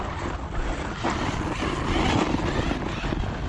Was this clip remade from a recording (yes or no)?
no